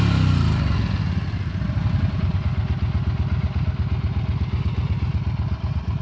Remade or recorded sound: recorded